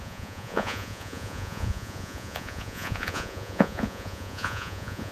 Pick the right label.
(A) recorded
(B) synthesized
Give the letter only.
B